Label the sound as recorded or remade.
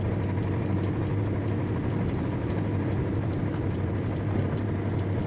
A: recorded